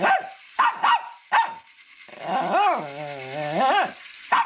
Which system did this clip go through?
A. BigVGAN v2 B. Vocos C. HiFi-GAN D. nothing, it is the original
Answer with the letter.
D